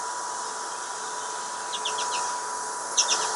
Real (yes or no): yes